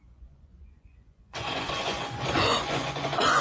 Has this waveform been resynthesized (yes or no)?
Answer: yes